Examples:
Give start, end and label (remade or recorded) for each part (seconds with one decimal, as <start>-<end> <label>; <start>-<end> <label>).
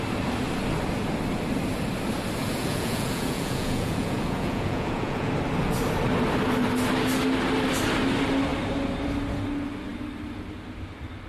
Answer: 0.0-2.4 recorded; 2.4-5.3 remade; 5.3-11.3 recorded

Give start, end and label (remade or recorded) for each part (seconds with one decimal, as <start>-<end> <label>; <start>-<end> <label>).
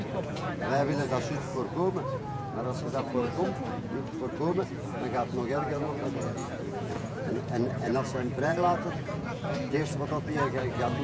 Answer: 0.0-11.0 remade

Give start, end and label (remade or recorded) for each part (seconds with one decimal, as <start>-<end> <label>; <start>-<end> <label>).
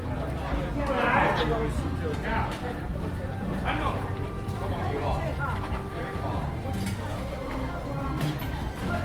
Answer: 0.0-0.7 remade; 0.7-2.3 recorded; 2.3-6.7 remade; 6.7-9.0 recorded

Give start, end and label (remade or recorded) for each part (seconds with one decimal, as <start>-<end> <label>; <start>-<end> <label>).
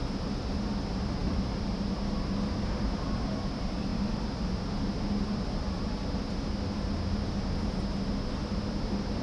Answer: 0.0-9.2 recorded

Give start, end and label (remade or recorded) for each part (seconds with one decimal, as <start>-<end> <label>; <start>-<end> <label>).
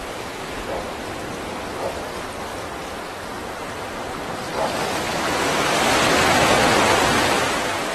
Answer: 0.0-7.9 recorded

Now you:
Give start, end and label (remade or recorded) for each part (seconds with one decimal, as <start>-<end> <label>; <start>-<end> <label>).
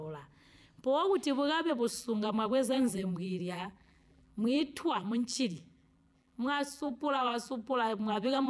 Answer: 0.0-1.7 recorded; 1.7-8.5 remade